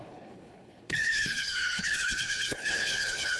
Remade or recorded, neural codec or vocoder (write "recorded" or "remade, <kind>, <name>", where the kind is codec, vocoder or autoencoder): remade, codec, HILCodec